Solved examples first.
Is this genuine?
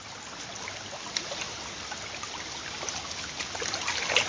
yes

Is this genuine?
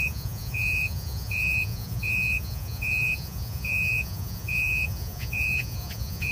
no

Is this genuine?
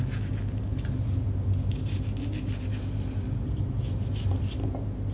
yes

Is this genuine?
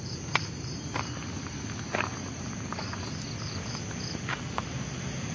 yes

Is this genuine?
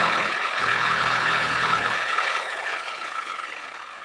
no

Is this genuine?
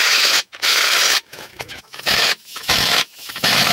no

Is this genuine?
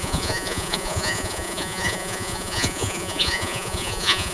no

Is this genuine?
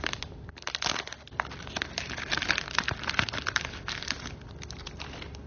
yes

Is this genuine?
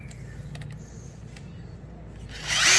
yes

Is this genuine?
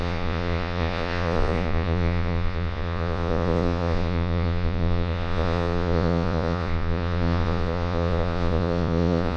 no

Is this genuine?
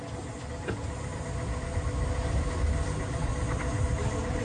yes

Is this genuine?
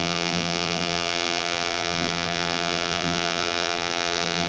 no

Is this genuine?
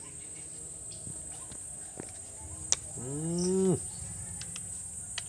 yes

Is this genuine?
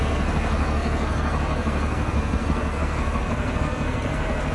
no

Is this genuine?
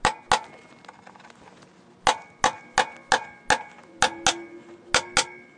yes